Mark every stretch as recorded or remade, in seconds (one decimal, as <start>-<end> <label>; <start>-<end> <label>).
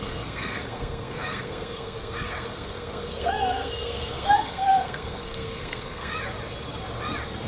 0.0-6.1 remade; 6.1-7.5 recorded